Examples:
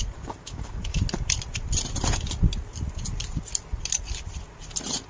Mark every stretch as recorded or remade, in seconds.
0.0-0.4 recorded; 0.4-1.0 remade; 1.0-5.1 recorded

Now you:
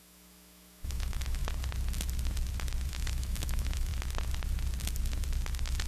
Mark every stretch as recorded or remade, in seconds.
0.0-1.4 remade; 1.4-2.9 recorded; 2.9-3.9 remade; 3.9-5.9 recorded

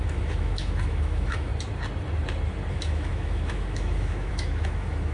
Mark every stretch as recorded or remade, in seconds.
0.0-1.5 remade; 1.5-2.7 recorded; 2.7-5.1 remade